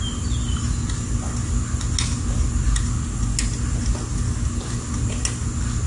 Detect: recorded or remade recorded